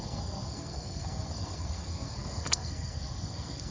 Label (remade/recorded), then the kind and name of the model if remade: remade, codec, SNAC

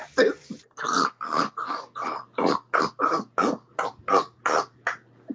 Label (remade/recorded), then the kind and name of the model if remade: recorded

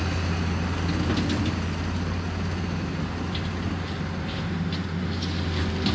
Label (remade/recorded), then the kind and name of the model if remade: recorded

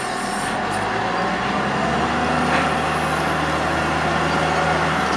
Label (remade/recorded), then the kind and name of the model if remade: recorded